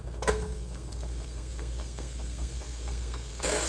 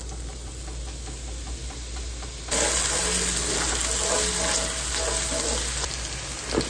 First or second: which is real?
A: second